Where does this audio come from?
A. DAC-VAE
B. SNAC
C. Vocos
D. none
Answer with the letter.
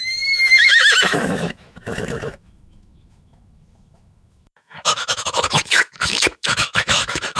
A